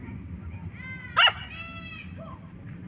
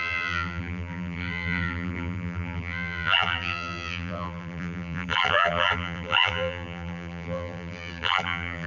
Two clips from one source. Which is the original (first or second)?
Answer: first